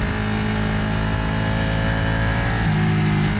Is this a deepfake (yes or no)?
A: no